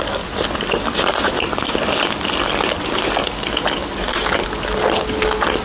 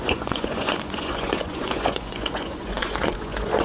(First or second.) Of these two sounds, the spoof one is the second